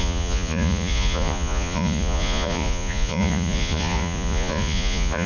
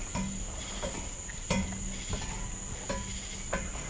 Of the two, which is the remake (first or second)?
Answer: first